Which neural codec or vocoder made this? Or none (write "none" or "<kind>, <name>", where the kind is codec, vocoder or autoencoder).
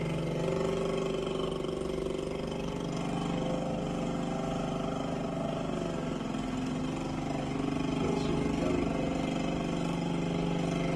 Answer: none